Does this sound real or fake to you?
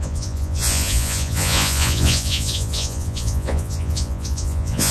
fake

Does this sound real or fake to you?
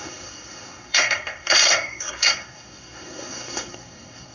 fake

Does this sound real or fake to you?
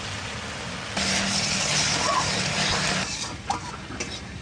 real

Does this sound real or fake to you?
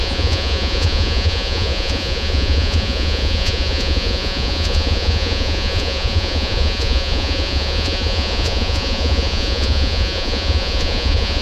fake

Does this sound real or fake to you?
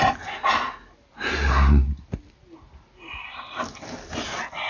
real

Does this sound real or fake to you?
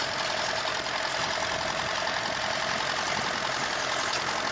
real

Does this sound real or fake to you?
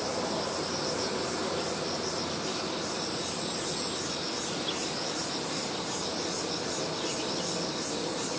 real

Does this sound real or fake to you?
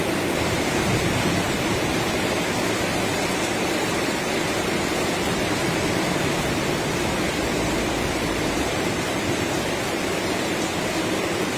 fake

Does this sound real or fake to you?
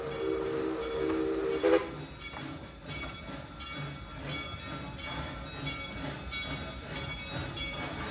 real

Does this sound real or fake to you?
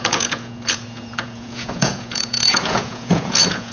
fake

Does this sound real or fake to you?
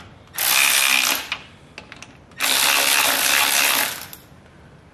real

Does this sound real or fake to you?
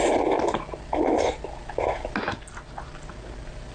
real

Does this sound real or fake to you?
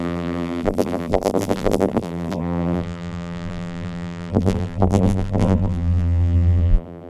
fake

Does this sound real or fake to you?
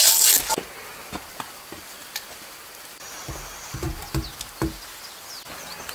real